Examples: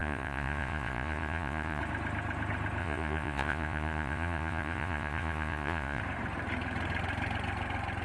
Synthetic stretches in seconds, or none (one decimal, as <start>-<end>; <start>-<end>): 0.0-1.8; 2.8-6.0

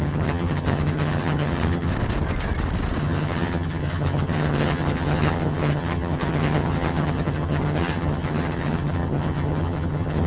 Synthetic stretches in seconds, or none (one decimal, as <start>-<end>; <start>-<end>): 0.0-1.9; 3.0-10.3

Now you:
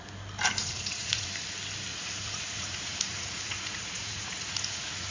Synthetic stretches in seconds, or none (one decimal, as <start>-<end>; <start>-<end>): 0.6-1.3; 1.9-5.1

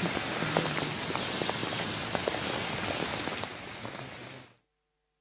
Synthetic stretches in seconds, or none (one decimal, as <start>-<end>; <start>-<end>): none

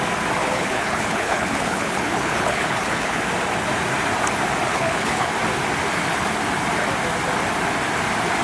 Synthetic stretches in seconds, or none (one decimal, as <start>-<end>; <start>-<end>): 0.4-3.2; 4.7-5.3